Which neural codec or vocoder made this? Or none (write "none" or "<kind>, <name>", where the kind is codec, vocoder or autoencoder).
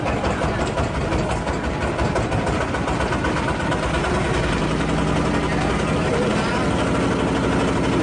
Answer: none